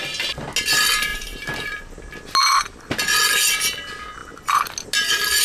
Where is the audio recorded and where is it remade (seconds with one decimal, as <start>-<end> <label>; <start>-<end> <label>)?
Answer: 0.0-1.1 recorded; 1.1-1.8 remade; 1.8-5.4 recorded